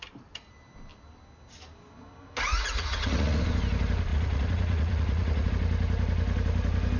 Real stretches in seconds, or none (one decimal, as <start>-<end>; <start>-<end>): 0.0-2.5; 3.4-4.1; 5.5-7.0